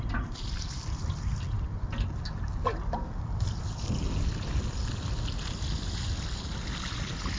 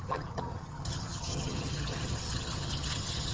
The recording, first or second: first